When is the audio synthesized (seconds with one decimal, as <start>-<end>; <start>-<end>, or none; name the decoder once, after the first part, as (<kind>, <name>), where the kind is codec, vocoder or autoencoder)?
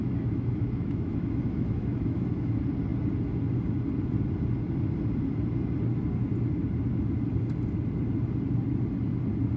0.0-2.5 (autoencoder, DAC-VAE)